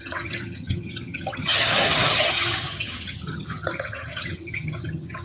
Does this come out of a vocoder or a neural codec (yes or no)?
yes